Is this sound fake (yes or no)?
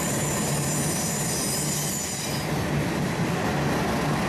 no